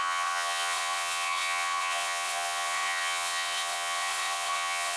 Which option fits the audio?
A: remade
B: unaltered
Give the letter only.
A